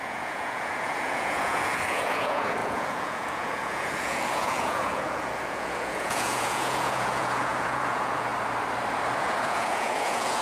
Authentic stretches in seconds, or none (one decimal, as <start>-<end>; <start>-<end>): 8.3-9.2